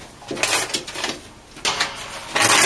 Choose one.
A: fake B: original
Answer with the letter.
B